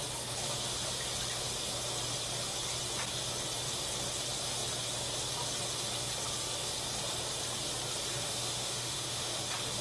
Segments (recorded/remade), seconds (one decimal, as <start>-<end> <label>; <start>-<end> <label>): 0.0-8.1 recorded; 8.1-9.4 remade; 9.4-9.8 recorded